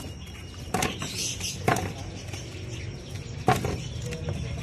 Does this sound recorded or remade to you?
recorded